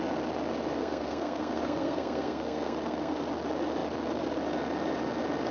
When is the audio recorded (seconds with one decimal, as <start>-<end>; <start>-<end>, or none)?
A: 0.0-0.8; 3.2-5.5